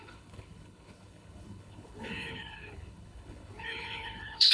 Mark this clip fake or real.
fake